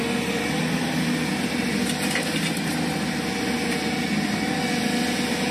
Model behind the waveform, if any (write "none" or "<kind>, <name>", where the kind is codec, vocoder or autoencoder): none